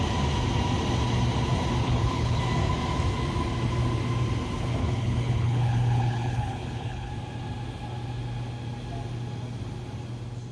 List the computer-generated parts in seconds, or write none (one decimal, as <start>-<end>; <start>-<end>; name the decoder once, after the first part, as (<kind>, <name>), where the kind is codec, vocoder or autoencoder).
1.8-2.4 (codec, HILCodec); 4.8-7.1